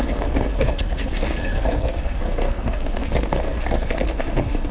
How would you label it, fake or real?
fake